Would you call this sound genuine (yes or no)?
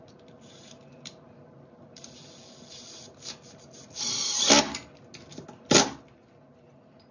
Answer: yes